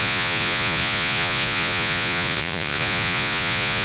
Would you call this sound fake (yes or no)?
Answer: yes